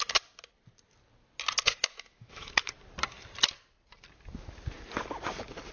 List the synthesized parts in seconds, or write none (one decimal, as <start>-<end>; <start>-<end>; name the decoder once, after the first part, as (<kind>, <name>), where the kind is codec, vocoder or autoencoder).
1.9-2.7 (autoencoder, DAC-VAE)